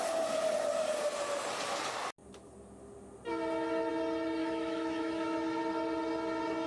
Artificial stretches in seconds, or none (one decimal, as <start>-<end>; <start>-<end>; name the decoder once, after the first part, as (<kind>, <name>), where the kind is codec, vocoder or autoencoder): 4.4-5.6 (autoencoder, DAC-VAE)